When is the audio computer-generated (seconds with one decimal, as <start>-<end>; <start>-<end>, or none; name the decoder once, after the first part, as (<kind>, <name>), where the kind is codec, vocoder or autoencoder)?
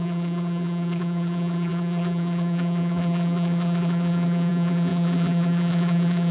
0.0-6.3 (vocoder, BigVGAN v2)